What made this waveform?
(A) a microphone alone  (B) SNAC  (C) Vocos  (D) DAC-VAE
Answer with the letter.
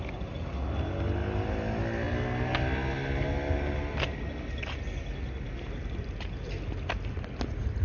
A